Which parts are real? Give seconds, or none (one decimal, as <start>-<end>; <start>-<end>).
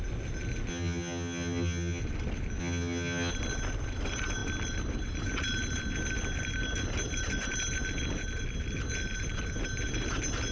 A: 0.0-0.7; 2.0-2.6; 3.3-10.5